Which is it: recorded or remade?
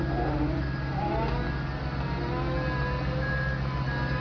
recorded